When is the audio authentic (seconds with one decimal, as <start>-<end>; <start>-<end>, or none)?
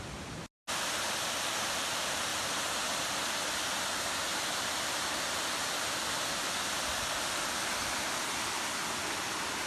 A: 0.0-9.7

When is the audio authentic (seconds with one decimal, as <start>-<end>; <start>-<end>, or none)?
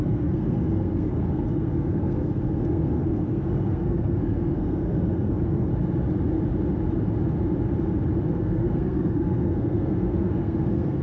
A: 5.7-8.3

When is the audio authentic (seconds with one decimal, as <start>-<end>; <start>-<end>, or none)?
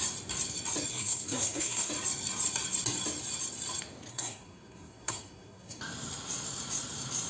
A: 0.0-0.9; 1.9-4.1; 5.8-7.3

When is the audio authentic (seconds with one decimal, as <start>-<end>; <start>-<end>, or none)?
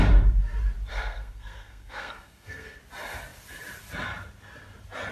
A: 0.0-0.9; 2.8-5.1